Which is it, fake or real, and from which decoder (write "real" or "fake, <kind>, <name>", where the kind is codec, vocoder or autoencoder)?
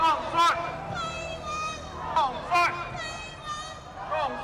real